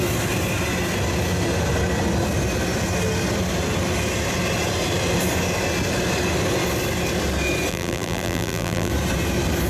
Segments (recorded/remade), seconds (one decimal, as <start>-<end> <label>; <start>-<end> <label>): 0.0-7.7 recorded; 7.7-8.9 remade; 8.9-9.7 recorded